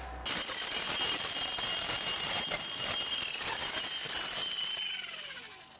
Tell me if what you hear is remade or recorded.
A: recorded